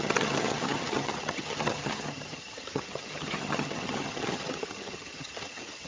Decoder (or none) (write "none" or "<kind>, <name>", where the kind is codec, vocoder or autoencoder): vocoder, HiFi-GAN